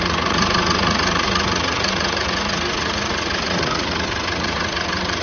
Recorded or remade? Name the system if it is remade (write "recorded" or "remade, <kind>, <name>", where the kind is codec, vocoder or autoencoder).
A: remade, vocoder, Vocos